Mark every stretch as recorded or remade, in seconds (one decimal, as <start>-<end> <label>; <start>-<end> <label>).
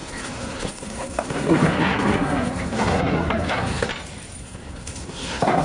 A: 0.0-3.9 remade; 3.9-4.4 recorded; 4.4-5.6 remade